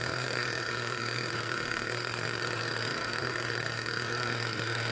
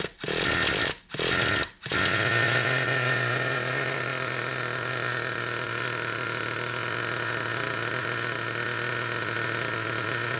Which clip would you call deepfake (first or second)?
first